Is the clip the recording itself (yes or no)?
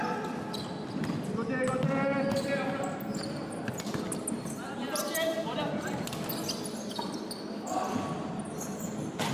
yes